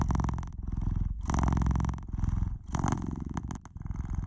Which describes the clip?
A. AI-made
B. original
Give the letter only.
B